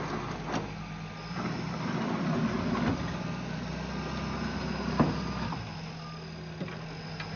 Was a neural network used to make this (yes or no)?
no